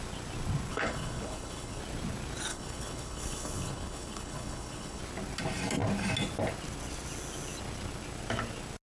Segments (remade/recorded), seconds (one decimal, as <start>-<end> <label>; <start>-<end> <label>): 0.0-0.7 recorded; 0.7-1.8 remade; 1.8-2.5 recorded; 2.5-5.0 remade; 5.0-8.9 recorded